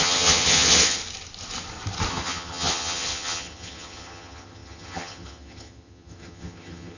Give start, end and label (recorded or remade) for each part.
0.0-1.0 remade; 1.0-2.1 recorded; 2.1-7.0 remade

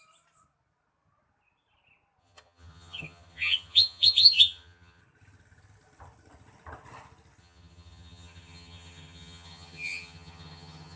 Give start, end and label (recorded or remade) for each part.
0.0-2.2 recorded; 2.2-5.0 remade; 5.0-7.4 recorded; 7.4-11.0 remade